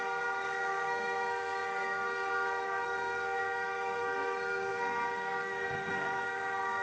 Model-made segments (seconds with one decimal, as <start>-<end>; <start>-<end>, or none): 0.0-6.8